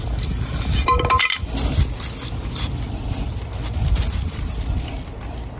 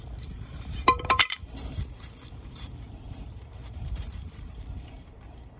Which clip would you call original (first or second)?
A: first